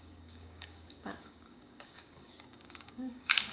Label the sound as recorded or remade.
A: remade